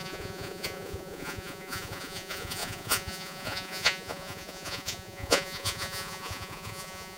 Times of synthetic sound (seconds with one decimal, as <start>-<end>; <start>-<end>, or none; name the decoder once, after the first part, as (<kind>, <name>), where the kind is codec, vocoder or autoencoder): 0.0-7.2 (vocoder, Vocos)